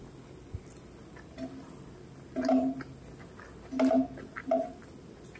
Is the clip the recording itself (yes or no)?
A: yes